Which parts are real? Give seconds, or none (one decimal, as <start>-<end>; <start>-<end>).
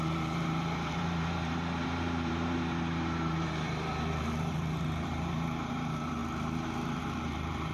none